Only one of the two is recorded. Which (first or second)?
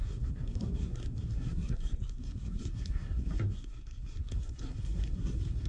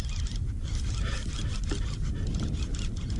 second